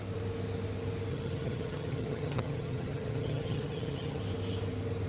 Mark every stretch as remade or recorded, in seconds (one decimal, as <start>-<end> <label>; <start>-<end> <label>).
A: 0.0-1.1 recorded; 1.1-4.2 remade; 4.2-5.1 recorded